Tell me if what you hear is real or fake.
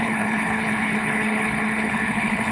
fake